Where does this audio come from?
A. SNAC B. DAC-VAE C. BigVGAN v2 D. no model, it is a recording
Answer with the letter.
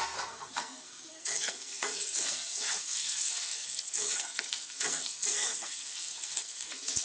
A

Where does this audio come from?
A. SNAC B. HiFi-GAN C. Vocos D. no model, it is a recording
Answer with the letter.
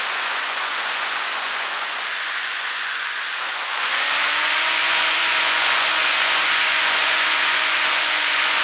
C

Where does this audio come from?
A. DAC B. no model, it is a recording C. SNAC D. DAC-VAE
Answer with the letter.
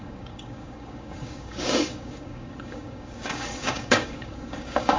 A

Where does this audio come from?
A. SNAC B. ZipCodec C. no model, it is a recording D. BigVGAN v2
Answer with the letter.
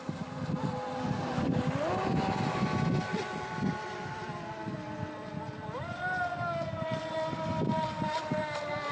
C